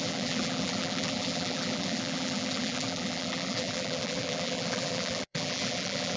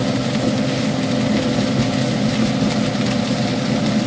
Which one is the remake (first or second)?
first